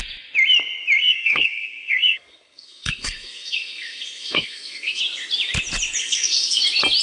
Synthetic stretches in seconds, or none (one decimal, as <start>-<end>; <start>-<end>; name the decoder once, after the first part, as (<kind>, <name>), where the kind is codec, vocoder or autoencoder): 1.0-5.0 (codec, SNAC); 6.0-6.6